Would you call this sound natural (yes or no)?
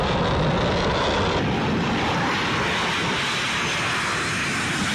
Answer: yes